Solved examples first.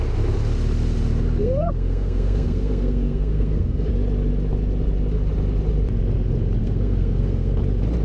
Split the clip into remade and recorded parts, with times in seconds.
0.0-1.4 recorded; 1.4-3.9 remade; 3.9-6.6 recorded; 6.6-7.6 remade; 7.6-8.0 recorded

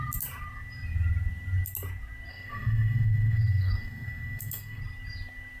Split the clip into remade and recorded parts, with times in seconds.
0.0-2.3 recorded; 2.3-4.8 remade; 4.8-5.6 recorded

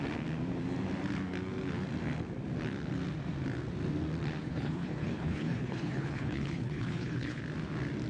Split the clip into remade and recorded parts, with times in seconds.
0.0-4.4 recorded; 4.4-7.4 remade; 7.4-8.1 recorded

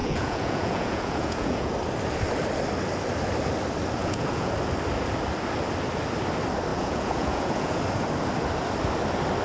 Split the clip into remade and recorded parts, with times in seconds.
0.0-1.7 remade; 1.7-4.0 recorded; 4.0-4.5 remade; 4.5-6.7 recorded; 6.7-7.8 remade; 7.8-9.4 recorded

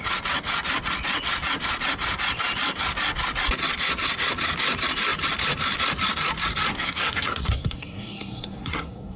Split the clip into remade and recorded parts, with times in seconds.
0.0-6.7 recorded; 6.7-9.2 remade